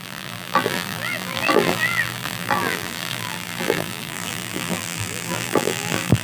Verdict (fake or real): fake